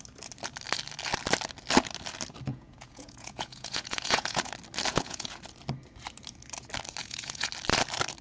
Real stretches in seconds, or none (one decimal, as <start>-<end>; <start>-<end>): 0.0-2.5; 4.5-4.9; 5.4-7.0; 7.5-8.2